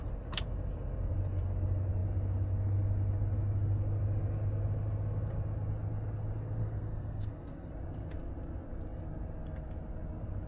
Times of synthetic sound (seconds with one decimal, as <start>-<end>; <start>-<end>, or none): 6.6-7.7

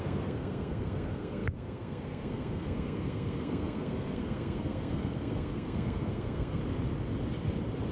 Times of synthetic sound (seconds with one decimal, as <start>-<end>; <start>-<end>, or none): 0.0-6.6

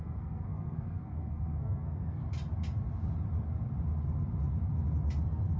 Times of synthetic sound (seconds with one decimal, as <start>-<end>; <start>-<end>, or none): 0.0-2.2

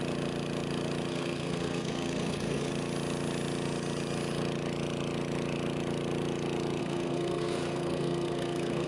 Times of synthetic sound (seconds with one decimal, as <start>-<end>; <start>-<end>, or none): 1.1-2.7; 6.8-8.9

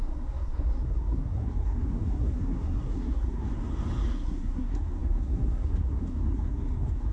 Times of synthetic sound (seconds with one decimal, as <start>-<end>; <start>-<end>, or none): 0.0-3.5; 4.1-7.1

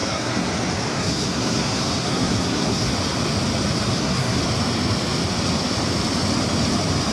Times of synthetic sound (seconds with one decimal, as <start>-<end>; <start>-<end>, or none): 0.0-0.5; 0.9-2.9; 3.9-4.4